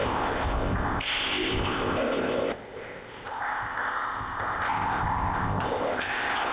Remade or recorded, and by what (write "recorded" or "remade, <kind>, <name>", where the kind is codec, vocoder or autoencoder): remade, codec, ZipCodec